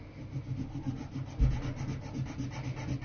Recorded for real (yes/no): yes